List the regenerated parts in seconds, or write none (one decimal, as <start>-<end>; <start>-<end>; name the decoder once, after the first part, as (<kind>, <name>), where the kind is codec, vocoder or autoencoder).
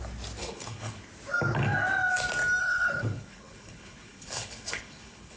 0.4-1.0 (codec, HILCodec); 2.6-5.4